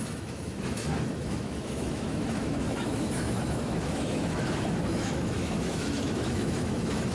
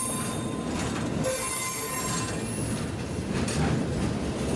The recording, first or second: second